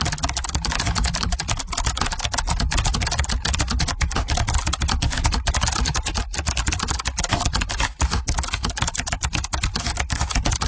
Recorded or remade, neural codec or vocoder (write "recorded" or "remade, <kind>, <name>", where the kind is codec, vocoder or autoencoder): recorded